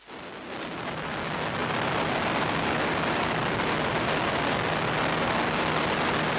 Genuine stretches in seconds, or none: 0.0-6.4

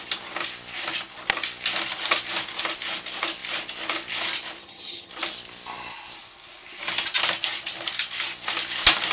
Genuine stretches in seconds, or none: 0.0-4.6; 5.1-9.1

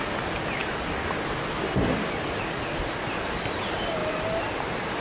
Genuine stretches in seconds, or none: 0.0-4.0; 4.6-5.0

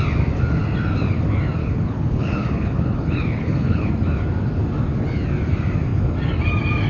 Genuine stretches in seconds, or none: 0.0-1.6; 3.9-6.9

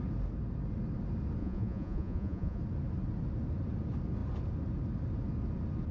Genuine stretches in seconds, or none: 0.0-1.4; 2.6-5.9

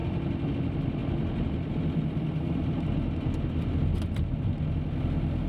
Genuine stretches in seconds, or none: 0.0-5.5

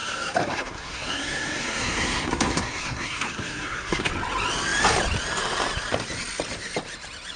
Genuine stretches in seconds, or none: 4.1-7.4